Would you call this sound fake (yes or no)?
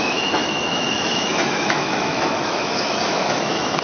yes